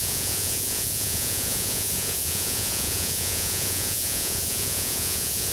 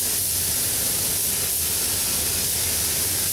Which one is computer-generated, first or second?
first